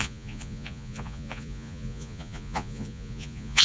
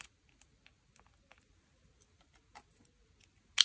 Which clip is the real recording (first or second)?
second